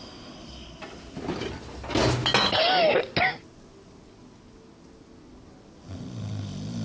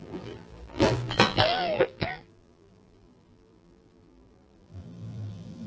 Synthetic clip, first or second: second